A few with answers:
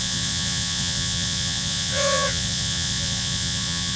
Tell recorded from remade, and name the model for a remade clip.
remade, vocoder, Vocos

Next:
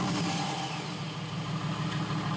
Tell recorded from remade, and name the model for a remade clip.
recorded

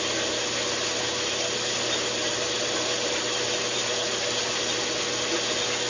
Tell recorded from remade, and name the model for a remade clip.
recorded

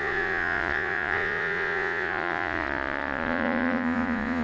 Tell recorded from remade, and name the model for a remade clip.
remade, vocoder, Vocos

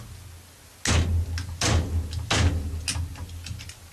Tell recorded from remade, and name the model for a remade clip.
recorded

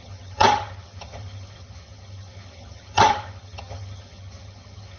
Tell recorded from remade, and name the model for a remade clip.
remade, vocoder, HiFi-GAN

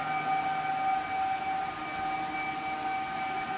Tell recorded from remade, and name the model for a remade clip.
recorded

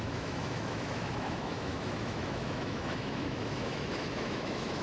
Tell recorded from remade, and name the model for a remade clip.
remade, autoencoder, DAC-VAE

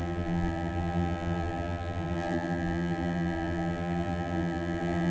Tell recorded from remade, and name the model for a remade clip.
remade, vocoder, BigVGAN v2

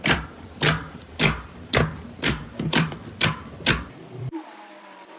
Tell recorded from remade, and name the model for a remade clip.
remade, vocoder, BigVGAN v2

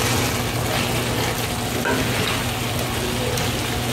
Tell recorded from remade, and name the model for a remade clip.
recorded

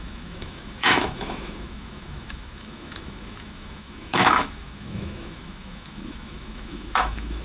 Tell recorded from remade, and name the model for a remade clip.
remade, autoencoder, DAC-VAE